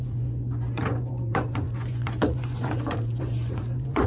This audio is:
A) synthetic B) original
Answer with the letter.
A